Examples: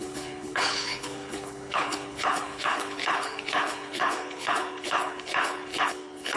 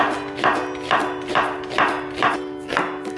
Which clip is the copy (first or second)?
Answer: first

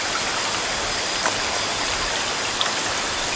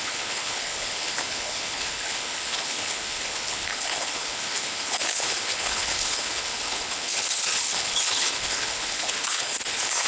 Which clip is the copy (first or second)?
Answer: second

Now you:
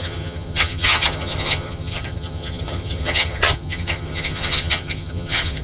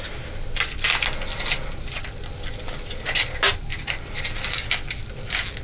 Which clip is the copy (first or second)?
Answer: first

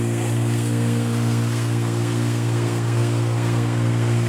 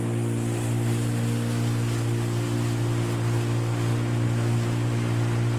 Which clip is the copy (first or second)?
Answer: first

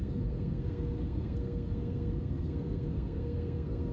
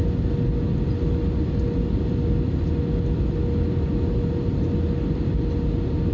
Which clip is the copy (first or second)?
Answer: first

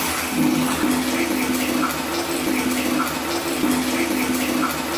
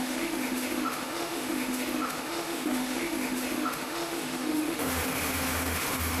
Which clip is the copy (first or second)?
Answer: second